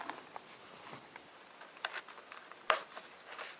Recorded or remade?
recorded